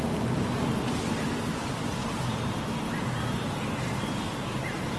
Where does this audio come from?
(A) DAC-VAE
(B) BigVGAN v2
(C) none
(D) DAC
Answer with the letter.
C